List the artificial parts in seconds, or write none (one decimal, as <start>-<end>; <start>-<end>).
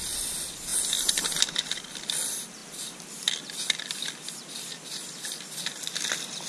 none